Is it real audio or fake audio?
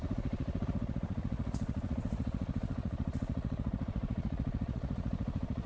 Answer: fake